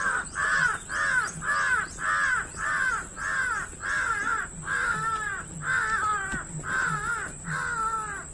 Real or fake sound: real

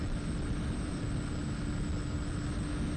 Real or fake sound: real